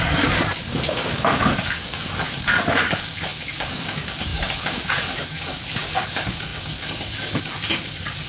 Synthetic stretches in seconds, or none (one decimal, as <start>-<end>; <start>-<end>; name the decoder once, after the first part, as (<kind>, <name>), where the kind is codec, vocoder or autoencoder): 0.0-8.3 (codec, DAC)